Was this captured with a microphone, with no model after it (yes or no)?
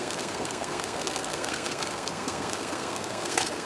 no